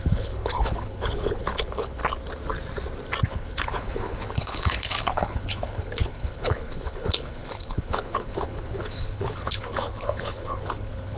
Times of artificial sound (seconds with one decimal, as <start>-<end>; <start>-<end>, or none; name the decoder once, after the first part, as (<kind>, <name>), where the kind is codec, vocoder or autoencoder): 0.0-2.0 (codec, HILCodec); 3.2-11.2

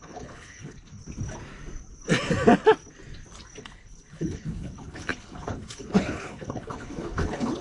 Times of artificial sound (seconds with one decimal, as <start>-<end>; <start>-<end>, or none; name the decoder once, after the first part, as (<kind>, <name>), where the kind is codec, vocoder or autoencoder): 0.0-1.0 (codec, HILCodec); 3.6-7.6